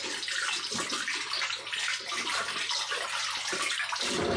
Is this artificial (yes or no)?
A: no